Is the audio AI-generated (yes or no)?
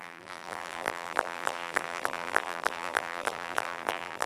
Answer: yes